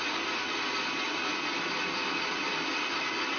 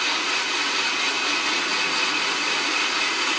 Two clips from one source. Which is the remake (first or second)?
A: second